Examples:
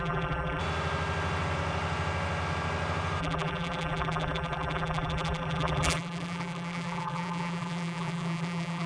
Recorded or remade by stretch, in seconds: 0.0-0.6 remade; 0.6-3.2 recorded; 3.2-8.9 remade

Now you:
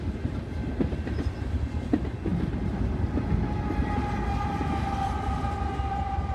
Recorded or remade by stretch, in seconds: 0.0-6.3 recorded

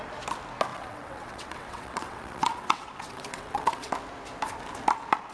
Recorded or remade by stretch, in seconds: 0.0-0.7 recorded; 0.7-3.9 remade; 3.9-5.3 recorded

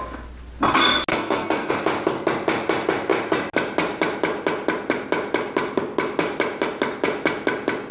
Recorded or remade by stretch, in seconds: 0.0-1.1 recorded; 1.1-1.7 remade; 1.7-7.9 recorded

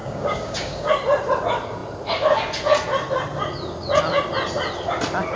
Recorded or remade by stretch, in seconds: 0.0-0.9 remade; 0.9-5.4 recorded

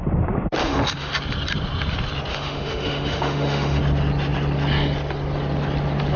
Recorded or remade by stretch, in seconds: 0.0-0.6 recorded; 0.6-1.1 remade; 1.1-2.3 recorded; 2.3-3.8 remade; 3.8-6.2 recorded